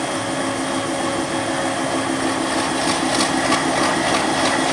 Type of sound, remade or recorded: recorded